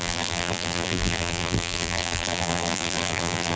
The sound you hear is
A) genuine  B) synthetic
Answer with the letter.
B